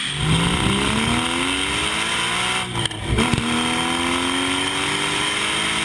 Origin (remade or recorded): recorded